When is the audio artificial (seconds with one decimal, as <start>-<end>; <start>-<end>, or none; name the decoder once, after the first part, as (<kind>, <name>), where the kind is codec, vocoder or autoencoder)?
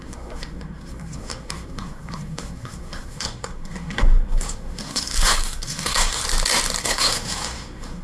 0.0-6.2 (codec, SNAC); 6.8-8.0